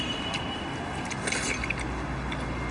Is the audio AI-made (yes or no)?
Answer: no